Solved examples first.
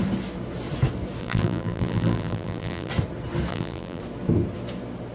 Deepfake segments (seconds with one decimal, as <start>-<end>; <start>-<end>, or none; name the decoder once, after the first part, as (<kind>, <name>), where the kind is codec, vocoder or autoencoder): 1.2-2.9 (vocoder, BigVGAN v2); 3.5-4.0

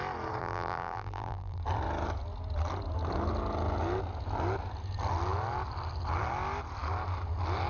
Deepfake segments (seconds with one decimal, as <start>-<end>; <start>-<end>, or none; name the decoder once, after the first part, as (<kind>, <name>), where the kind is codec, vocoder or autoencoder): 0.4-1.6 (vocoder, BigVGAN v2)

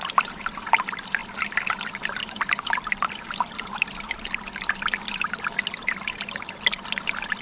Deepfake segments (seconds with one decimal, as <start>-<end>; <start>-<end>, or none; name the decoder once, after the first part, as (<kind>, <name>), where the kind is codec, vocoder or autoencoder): 1.2-1.8 (vocoder, BigVGAN v2); 2.2-5.6

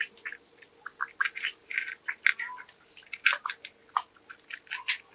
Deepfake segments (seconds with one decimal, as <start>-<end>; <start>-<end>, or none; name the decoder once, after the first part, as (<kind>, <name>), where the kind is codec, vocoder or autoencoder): none

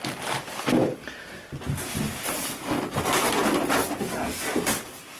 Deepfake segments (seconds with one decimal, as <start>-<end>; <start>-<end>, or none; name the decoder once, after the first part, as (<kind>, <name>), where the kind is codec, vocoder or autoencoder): none

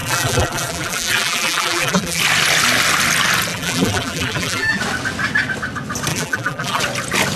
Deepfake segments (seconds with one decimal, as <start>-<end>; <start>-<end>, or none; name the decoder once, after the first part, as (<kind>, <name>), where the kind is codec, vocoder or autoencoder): 0.0-2.2 (vocoder, BigVGAN v2); 3.5-4.8; 6.1-6.8

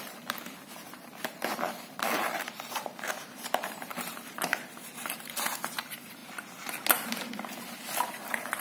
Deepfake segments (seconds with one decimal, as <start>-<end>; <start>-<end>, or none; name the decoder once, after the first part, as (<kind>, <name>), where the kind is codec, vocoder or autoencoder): 0.0-6.2 (vocoder, BigVGAN v2); 8.1-8.6